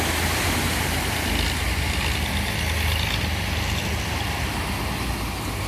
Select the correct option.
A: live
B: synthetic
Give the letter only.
A